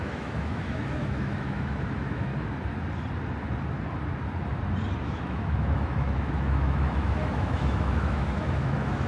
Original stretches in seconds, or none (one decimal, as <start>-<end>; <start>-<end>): 2.3-5.0